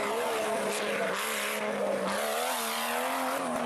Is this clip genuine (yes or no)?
yes